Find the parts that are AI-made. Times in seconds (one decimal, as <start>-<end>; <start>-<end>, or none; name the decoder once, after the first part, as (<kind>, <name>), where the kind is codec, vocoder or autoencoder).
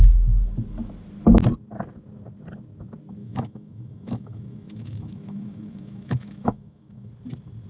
3.2-7.1 (autoencoder, DAC-VAE)